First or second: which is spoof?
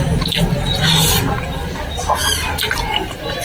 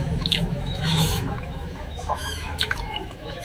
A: second